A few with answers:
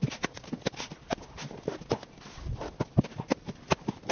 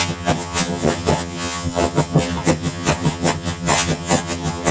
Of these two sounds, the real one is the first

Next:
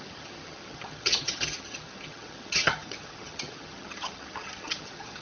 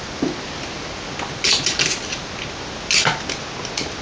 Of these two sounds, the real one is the second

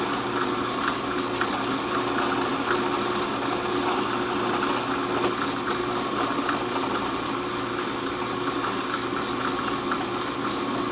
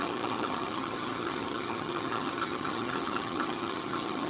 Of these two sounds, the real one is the first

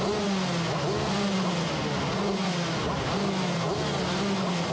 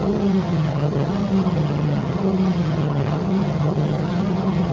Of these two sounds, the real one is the first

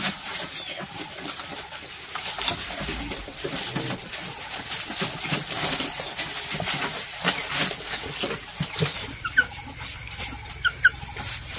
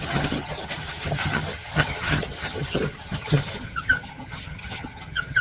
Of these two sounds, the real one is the first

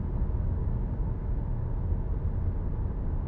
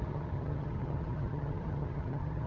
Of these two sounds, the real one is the first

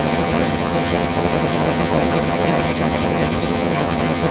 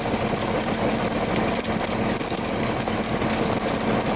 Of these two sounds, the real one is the second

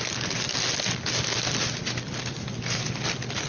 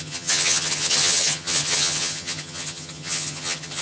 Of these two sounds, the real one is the first